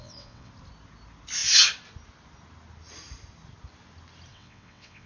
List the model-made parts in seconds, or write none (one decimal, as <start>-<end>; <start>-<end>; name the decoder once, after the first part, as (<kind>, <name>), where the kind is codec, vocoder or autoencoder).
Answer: 0.0-0.5 (vocoder, WaveNeXt); 4.3-5.1